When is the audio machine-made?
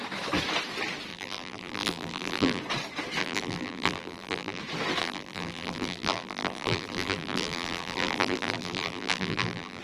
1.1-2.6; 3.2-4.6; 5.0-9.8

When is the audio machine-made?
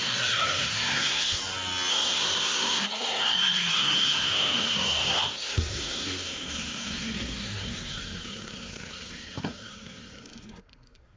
0.0-1.4; 1.9-11.2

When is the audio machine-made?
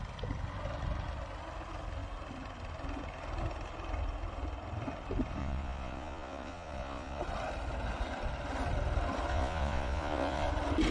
5.4-7.2; 9.3-10.5